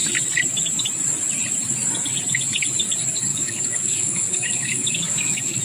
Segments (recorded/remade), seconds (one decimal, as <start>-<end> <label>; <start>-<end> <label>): 0.0-3.3 recorded; 3.3-5.6 remade